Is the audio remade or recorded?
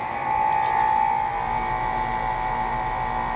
recorded